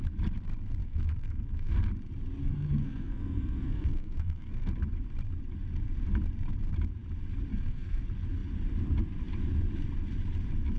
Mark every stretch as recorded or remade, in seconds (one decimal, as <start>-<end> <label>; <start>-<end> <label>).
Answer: 0.0-0.8 recorded; 0.8-1.9 remade; 1.9-2.4 recorded; 2.4-4.7 remade; 4.7-7.5 recorded; 7.5-8.0 remade; 8.0-10.8 recorded